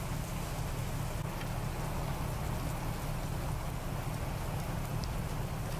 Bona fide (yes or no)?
yes